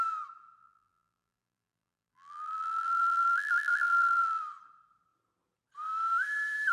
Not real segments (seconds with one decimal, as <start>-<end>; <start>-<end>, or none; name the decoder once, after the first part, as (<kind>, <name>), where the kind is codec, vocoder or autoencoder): 0.6-4.4 (vocoder, BigVGAN v2)